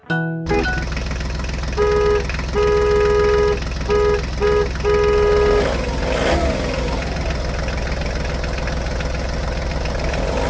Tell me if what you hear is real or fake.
real